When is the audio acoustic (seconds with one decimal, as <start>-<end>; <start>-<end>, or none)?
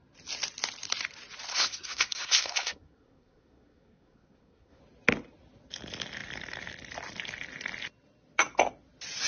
0.0-1.5; 4.8-9.3